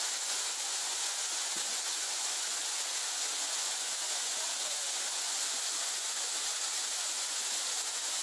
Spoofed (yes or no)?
yes